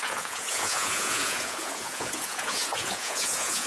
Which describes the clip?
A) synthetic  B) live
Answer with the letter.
A